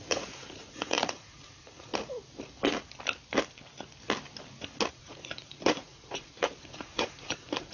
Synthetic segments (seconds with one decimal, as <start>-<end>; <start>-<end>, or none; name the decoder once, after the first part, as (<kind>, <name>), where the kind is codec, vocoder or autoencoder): 0.0-1.9 (vocoder, Vocos); 4.9-7.7